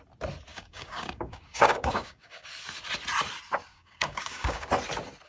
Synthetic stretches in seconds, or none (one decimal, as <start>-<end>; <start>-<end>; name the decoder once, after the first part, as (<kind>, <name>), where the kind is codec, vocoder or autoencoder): 0.5-2.5 (codec, DAC); 3.7-4.7

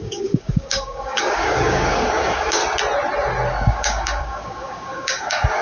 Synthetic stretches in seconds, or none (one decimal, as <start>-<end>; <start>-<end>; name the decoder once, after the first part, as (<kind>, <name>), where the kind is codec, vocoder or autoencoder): 0.0-2.6 (codec, DAC); 3.5-5.6

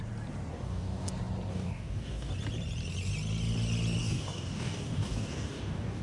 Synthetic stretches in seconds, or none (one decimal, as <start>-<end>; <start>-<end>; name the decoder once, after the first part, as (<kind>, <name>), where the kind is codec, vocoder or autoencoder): 0.5-1.1 (codec, DAC); 1.5-2.3; 4.0-6.0

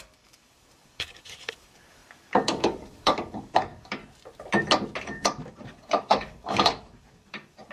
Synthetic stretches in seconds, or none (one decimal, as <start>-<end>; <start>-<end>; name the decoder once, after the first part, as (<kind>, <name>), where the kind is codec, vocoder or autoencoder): 0.0-4.0 (codec, DAC); 5.0-7.7

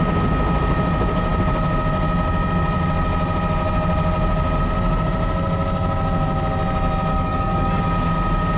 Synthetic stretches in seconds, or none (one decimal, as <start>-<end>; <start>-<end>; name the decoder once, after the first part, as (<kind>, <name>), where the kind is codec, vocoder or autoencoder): 7.1-7.8 (codec, DAC)